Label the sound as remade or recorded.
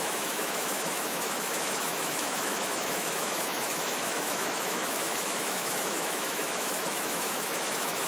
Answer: remade